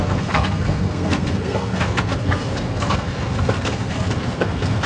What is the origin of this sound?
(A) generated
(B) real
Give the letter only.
A